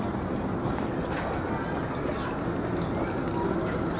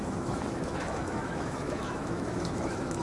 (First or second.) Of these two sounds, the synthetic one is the second